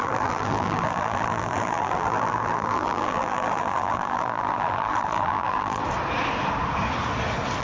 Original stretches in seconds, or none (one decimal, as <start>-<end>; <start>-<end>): 5.8-7.6